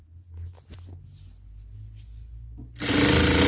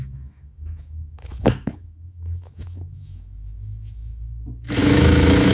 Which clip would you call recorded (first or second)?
first